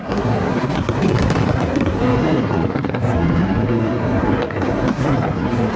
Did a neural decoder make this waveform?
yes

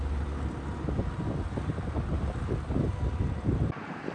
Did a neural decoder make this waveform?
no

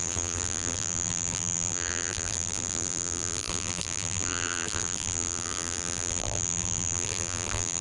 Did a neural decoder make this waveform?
yes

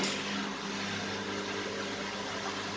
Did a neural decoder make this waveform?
no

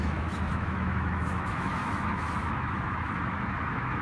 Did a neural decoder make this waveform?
yes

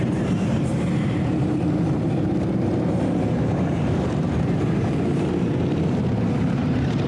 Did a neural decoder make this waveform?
yes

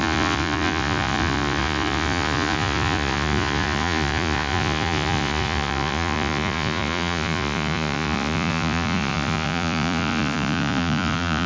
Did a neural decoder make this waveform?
yes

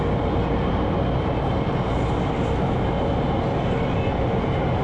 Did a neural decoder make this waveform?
no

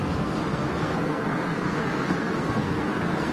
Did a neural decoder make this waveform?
yes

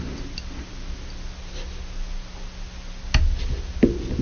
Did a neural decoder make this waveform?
no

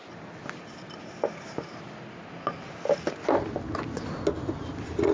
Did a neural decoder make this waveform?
no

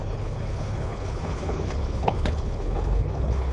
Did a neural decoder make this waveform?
yes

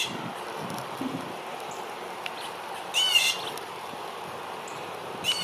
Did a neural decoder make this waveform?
no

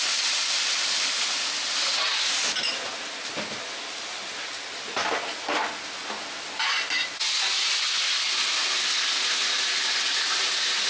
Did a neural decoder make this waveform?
no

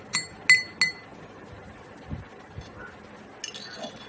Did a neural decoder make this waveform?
no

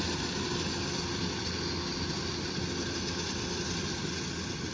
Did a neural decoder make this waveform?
no